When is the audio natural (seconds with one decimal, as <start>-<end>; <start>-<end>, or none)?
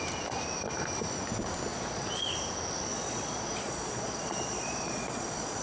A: 0.0-1.7; 2.3-2.9